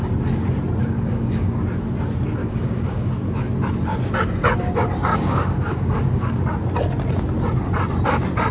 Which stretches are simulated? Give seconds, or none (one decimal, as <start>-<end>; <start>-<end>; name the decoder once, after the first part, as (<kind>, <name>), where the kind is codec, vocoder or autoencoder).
0.8-1.5 (codec, DAC); 2.4-3.1; 5.1-6.4